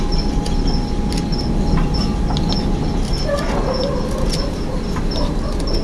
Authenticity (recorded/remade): recorded